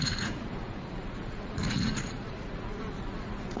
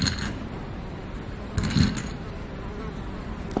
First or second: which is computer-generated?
first